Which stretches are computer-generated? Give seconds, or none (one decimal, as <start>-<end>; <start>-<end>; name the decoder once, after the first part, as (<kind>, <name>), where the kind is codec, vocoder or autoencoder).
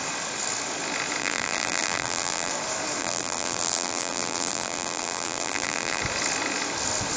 1.2-2.5 (vocoder, BigVGAN v2); 3.0-6.0